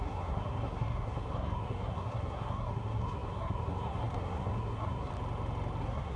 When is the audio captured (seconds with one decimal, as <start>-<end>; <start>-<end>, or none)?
5.1-5.8